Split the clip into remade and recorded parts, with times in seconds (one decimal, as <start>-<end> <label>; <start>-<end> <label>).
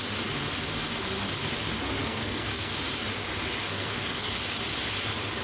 0.0-2.0 recorded; 2.0-2.7 remade; 2.7-3.7 recorded; 3.7-4.3 remade; 4.3-5.4 recorded